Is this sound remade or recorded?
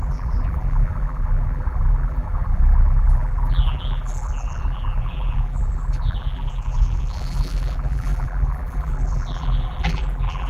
remade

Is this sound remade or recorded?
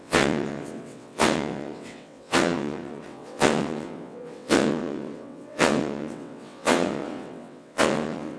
remade